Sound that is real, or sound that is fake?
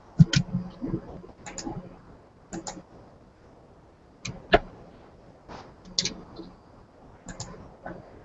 real